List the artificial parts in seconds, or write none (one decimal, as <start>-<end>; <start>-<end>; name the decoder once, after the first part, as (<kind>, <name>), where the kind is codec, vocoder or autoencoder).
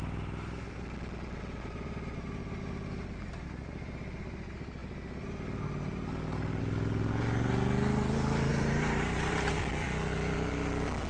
8.5-9.5 (vocoder, BigVGAN v2)